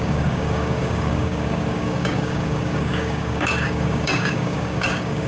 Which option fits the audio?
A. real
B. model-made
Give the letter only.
B